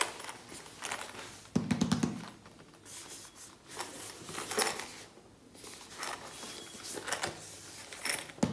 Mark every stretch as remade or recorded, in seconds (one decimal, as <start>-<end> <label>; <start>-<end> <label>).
0.0-8.5 recorded